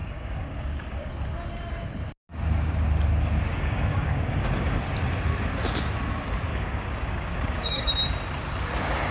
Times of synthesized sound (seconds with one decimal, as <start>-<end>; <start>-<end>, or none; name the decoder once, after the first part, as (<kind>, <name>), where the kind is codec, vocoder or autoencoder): 0.0-1.1 (codec, DAC); 3.5-4.8; 6.5-7.9